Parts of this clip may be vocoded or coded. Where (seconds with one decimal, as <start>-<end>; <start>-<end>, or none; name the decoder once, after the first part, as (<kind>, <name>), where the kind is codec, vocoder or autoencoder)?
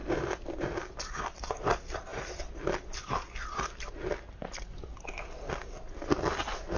none